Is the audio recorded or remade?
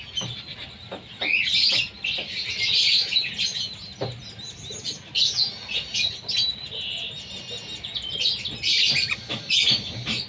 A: recorded